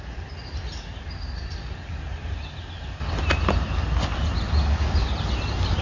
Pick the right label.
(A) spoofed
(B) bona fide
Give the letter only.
B